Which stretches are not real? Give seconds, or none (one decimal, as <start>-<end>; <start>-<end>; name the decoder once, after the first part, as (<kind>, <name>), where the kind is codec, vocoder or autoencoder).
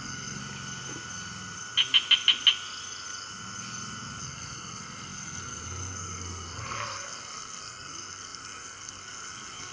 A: 0.0-0.4 (codec, SNAC); 4.2-9.7